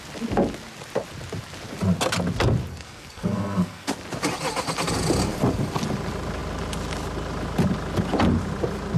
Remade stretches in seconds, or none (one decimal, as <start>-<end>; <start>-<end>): 2.7-3.9